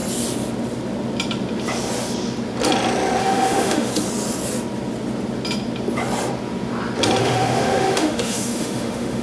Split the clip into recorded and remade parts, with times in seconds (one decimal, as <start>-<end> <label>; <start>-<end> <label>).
0.0-3.2 recorded; 3.2-3.9 remade; 3.9-7.2 recorded; 7.2-9.2 remade